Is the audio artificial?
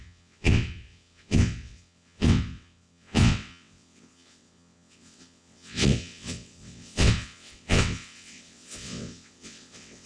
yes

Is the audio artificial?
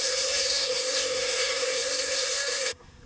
yes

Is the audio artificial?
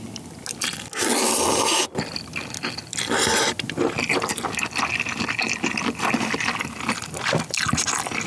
no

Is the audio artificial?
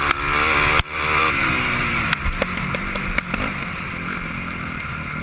no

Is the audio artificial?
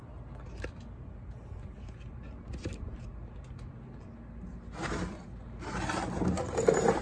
no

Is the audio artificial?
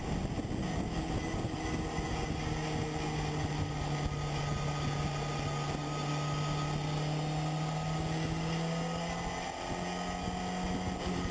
no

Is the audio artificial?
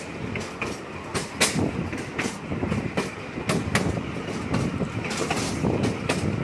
no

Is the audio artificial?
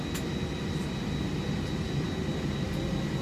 no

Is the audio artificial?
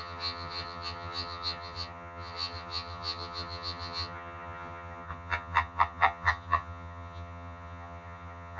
yes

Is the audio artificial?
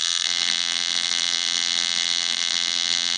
yes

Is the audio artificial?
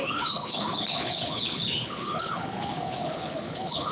yes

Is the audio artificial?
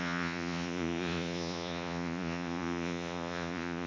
yes